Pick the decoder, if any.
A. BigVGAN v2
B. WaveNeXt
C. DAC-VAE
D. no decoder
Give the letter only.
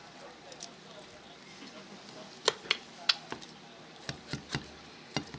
D